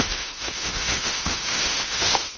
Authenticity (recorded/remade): remade